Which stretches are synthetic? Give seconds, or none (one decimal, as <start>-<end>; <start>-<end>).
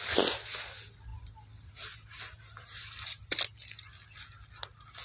none